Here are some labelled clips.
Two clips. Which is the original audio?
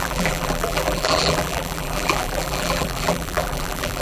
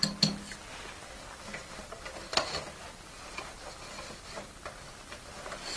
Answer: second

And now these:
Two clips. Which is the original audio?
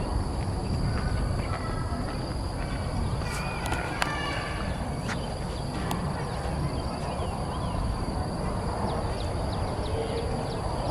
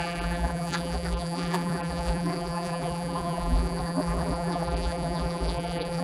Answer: first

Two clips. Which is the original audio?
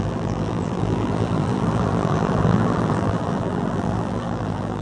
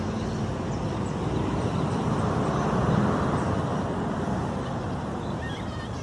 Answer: second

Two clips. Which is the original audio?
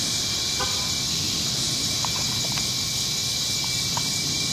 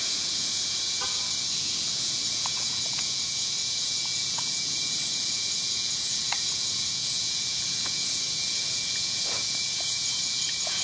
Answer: first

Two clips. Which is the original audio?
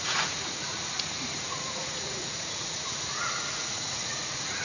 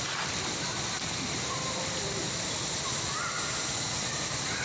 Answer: second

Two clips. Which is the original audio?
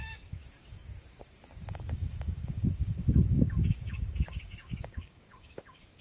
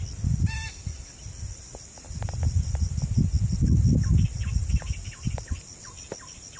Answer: second